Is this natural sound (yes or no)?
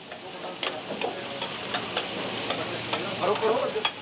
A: yes